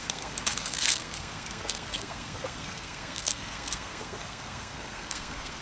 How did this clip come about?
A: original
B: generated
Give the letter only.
B